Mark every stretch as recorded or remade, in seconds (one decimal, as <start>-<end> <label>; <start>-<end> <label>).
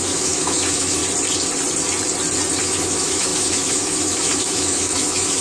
0.0-1.0 remade; 1.0-2.6 recorded; 2.6-5.4 remade